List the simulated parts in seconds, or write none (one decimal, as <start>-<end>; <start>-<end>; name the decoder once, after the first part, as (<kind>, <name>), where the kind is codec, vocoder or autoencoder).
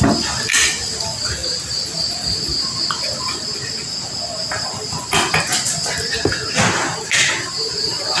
none